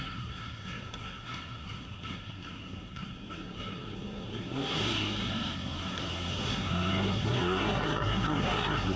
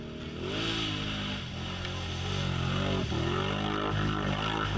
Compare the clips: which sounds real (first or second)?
second